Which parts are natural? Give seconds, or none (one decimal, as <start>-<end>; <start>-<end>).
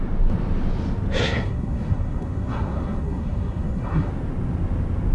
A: 0.0-1.2; 4.1-5.1